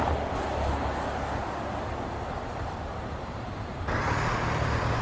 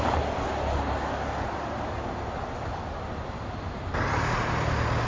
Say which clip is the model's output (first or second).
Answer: first